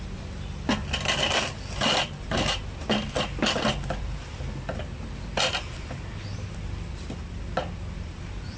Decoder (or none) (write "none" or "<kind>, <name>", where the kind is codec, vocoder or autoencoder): none